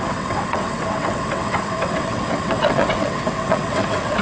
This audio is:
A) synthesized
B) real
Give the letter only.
A